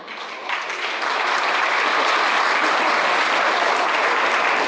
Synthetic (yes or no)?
no